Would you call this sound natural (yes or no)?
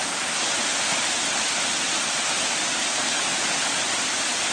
yes